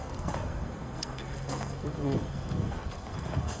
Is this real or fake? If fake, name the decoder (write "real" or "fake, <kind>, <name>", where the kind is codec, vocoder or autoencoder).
fake, codec, SNAC